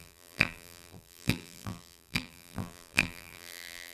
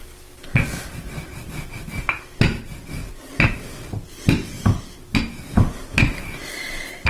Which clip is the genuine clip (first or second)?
second